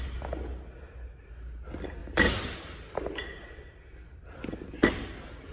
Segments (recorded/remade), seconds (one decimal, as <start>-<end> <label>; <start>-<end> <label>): 0.0-5.5 recorded